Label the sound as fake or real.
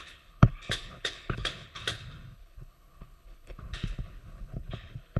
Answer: fake